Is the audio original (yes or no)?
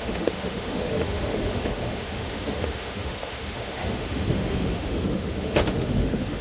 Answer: no